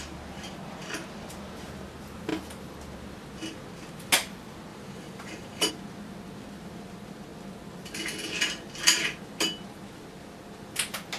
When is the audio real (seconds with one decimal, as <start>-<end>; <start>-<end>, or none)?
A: 0.0-4.7; 5.7-11.2